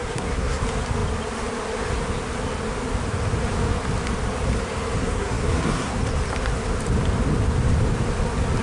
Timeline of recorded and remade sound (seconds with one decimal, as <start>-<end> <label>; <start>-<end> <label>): 0.0-0.6 remade; 0.6-5.0 recorded; 5.0-6.0 remade; 6.0-8.6 recorded